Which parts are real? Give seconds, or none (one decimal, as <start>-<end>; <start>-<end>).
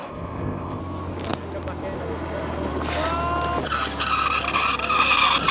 0.8-5.5